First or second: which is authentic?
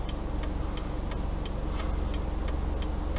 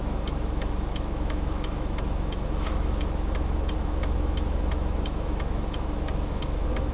first